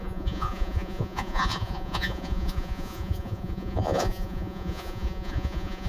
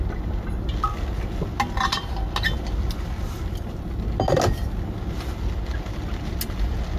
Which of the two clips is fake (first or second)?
first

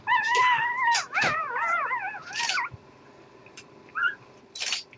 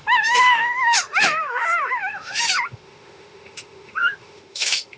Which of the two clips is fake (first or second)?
second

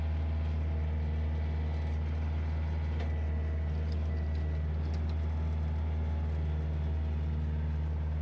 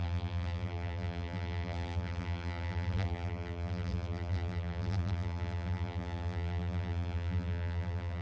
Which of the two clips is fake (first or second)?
second